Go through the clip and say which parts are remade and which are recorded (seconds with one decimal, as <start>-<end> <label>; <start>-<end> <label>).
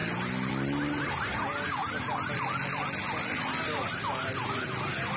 0.0-5.2 recorded